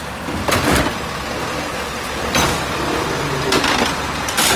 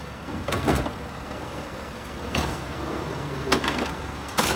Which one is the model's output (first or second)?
second